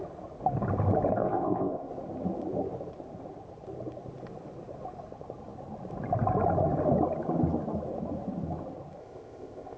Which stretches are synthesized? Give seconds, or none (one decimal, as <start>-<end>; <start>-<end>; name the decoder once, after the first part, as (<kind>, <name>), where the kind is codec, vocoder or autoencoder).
1.1-1.9 (codec, ZipCodec); 9.0-9.8